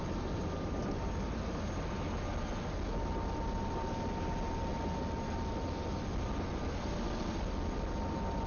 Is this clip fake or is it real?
real